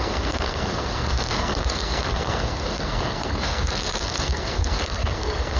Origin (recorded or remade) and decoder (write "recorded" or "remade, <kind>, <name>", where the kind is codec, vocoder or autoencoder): remade, codec, SNAC